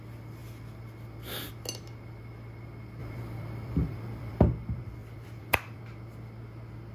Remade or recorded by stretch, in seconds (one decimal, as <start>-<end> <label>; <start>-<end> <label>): 0.0-3.0 recorded; 3.0-4.4 remade; 4.4-5.0 recorded; 5.0-5.8 remade; 5.8-6.9 recorded